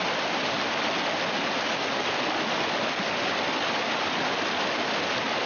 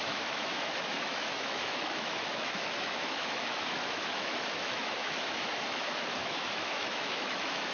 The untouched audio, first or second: first